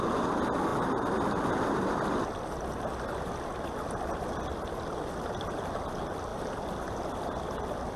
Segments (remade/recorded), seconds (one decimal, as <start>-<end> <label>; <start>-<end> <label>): 0.0-8.0 recorded